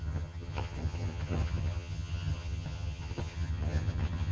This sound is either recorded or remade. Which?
remade